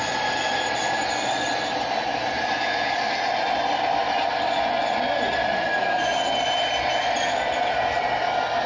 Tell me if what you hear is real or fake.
real